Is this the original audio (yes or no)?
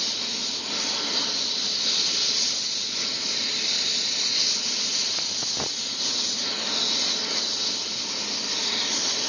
yes